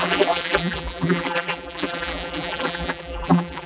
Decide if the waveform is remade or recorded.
remade